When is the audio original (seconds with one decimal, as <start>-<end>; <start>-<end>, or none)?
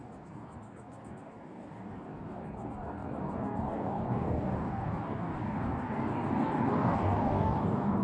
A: none